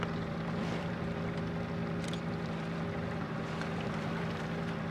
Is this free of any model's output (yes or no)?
yes